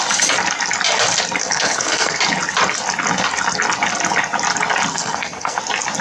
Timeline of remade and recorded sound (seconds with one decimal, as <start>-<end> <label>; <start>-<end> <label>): 0.0-1.4 recorded; 1.4-2.2 remade; 2.2-4.9 recorded; 4.9-5.6 remade; 5.6-6.0 recorded